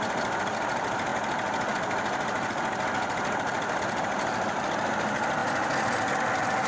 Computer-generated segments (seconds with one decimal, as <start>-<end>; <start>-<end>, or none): none